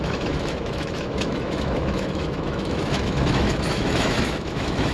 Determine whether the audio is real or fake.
fake